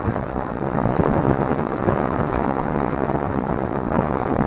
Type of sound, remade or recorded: remade